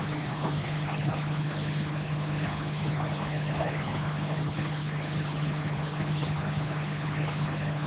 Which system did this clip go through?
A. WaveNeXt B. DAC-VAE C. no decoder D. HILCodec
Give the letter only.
D